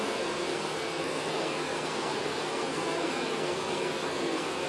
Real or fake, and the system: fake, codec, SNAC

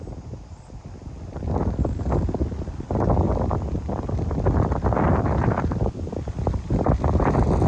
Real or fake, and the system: real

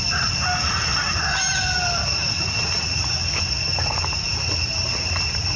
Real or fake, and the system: real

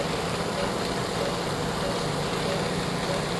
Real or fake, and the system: real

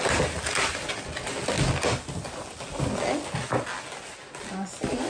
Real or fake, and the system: real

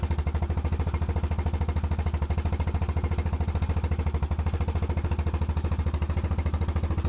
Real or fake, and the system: real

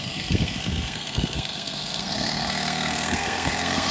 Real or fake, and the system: fake, codec, SNAC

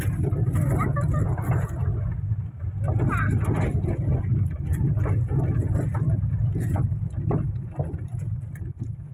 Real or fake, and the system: real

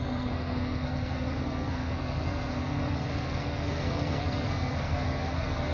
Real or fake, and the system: fake, codec, SNAC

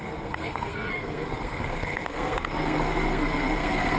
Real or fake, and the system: fake, codec, SNAC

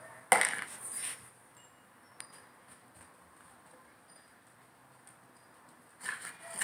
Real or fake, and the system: real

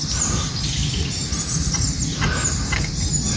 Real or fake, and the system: real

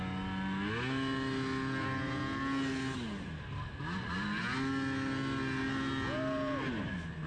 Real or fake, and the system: real